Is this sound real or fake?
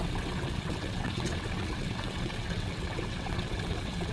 fake